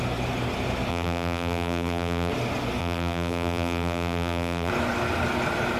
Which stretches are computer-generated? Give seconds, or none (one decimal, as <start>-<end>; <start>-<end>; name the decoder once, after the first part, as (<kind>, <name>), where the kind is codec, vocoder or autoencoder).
0.9-2.3 (vocoder, BigVGAN v2); 2.8-4.7